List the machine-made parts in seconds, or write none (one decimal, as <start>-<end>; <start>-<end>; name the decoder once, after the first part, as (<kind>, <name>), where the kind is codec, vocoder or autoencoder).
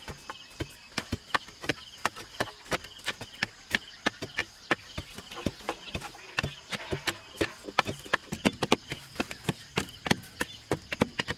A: none